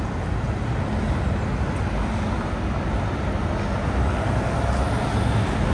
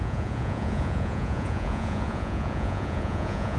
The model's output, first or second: second